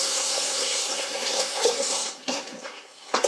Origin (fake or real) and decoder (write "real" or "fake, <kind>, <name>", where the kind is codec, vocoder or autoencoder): fake, codec, SNAC